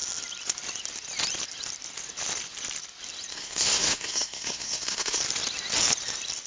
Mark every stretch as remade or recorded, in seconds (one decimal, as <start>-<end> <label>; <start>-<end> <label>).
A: 0.0-3.3 recorded; 3.3-5.2 remade; 5.2-6.5 recorded